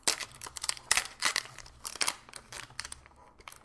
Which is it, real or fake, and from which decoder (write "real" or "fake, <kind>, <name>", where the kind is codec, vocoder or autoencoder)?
real